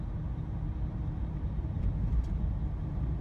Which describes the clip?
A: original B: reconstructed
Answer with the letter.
A